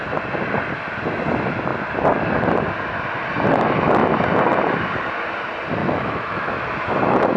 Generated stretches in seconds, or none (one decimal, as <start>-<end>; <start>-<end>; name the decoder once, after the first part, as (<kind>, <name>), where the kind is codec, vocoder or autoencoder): 5.8-6.6 (autoencoder, DAC-VAE)